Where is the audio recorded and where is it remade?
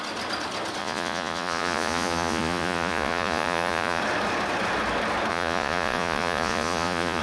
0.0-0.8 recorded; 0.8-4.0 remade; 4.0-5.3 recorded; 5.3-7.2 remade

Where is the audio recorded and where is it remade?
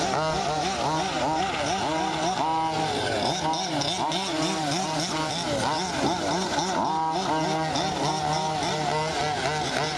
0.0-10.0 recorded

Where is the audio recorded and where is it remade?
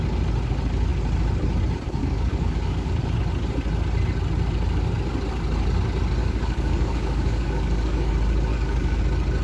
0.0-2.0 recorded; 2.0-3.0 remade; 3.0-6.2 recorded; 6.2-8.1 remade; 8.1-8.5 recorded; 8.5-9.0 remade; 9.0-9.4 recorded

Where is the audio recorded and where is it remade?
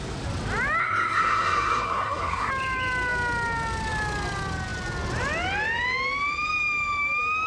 0.0-0.8 recorded; 0.8-2.5 remade; 2.5-7.5 recorded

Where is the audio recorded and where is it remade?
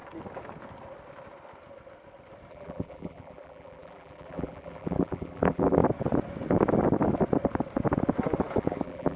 0.0-2.5 recorded; 2.5-5.8 remade; 5.8-8.6 recorded; 8.6-9.2 remade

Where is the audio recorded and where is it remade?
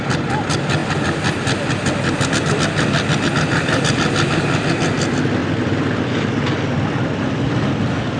0.0-5.4 recorded; 5.4-8.2 remade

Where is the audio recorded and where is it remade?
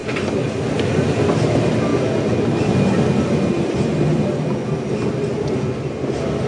0.0-6.5 recorded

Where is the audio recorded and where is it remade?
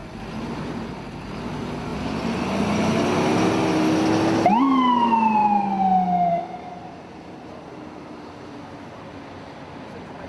0.0-10.3 recorded